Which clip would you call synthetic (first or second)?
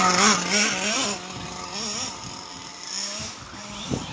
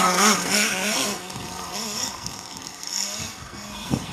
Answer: second